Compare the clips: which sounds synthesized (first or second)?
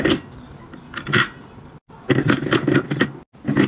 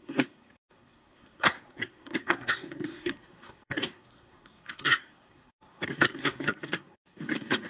second